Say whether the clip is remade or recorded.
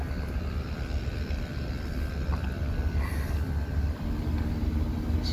recorded